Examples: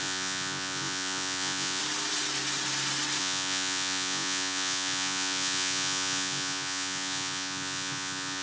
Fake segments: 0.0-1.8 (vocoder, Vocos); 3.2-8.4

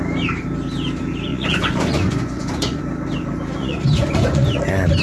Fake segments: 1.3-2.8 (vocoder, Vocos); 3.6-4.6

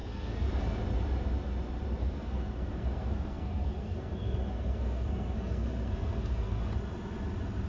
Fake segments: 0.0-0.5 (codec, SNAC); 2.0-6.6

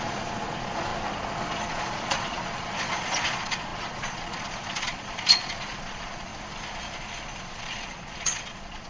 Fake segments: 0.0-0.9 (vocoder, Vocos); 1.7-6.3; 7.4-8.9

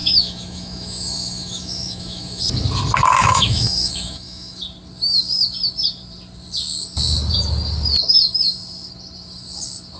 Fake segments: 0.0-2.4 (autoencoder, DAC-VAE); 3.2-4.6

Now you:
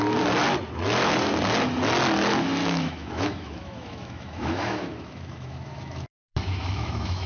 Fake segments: 2.6-7.3 (autoencoder, DAC-VAE)

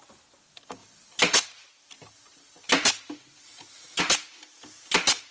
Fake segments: none

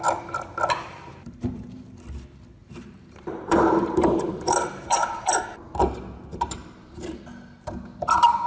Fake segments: 0.8-1.9 (vocoder, BigVGAN v2); 2.6-5.1; 6.6-7.2